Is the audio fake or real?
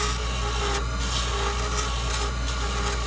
real